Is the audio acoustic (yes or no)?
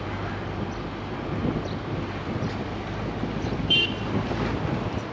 yes